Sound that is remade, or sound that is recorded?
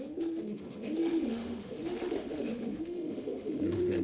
remade